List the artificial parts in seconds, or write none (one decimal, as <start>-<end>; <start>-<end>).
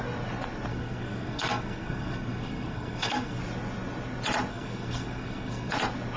0.7-3.4; 4.5-5.7